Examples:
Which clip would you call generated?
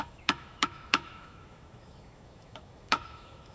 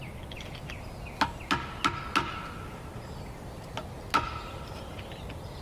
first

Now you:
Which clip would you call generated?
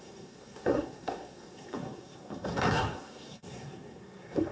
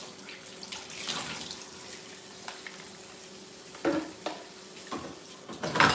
first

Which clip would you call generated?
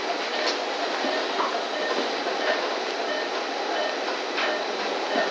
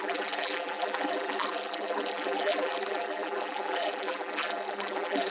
second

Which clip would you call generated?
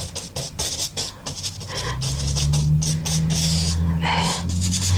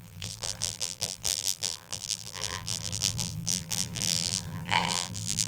second